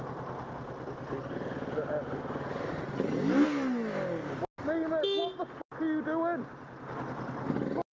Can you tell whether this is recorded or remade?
recorded